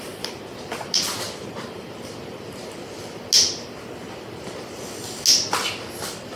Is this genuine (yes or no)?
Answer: yes